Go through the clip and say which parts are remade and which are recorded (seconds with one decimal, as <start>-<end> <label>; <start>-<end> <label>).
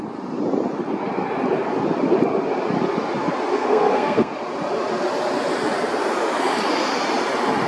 0.0-3.5 recorded; 3.5-4.3 remade; 4.3-7.7 recorded